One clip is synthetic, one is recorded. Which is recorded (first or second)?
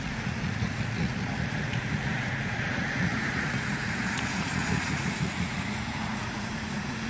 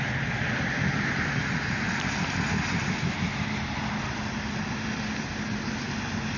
second